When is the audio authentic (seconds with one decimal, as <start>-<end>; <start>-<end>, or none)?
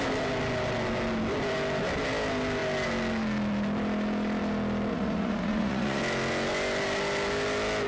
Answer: 0.0-4.9; 6.0-7.9